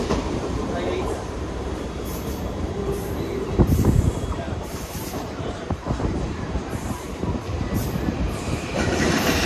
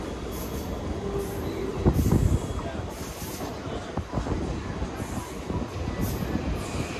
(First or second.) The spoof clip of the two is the first